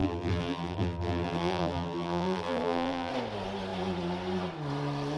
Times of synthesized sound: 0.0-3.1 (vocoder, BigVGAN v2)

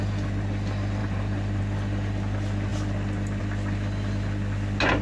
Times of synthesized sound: 1.0-1.6 (vocoder, BigVGAN v2)